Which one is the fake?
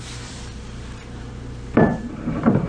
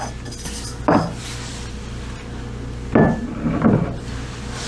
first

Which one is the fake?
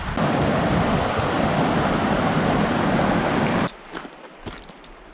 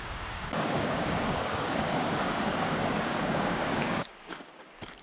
second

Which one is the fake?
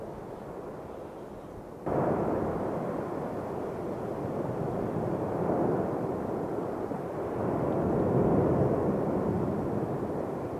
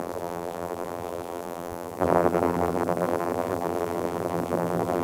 second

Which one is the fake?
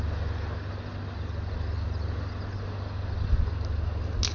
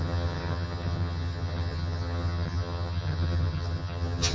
second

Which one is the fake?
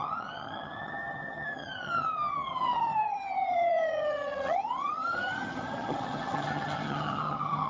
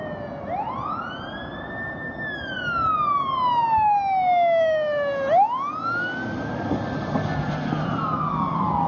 first